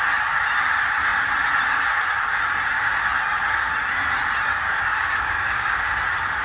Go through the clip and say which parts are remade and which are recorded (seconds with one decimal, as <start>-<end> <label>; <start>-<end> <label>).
0.0-4.5 recorded; 4.5-5.9 remade; 5.9-6.4 recorded